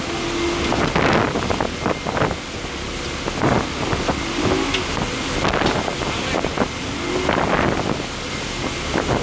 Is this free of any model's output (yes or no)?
yes